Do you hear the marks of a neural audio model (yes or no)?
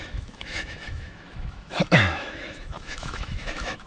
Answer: yes